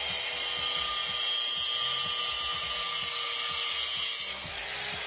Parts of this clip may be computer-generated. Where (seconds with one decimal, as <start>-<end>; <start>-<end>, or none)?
none